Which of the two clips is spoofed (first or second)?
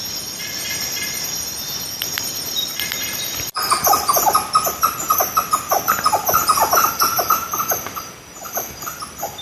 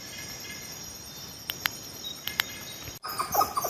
first